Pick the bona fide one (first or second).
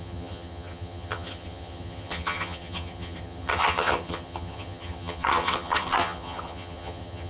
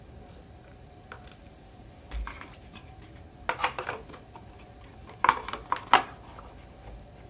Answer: second